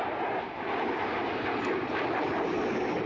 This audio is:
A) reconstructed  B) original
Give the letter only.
B